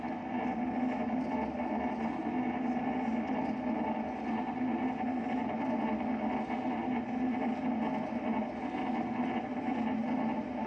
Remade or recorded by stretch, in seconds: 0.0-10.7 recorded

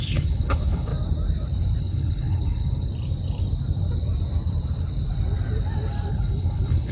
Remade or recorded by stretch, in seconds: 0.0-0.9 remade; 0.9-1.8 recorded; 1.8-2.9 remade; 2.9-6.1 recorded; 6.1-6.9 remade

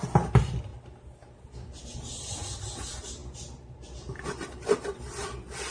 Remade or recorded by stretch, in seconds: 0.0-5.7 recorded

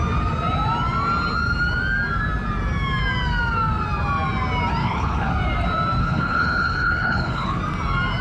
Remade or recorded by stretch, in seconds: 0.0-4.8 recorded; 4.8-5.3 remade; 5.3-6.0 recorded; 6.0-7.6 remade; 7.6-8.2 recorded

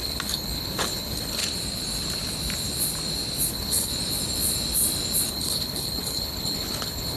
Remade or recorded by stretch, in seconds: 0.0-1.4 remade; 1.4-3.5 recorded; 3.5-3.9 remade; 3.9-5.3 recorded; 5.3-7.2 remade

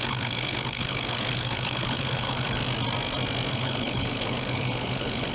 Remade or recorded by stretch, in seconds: 0.0-2.6 remade; 2.6-3.5 recorded; 3.5-5.3 remade

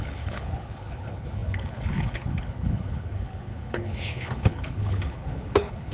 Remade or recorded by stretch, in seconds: 0.0-5.9 remade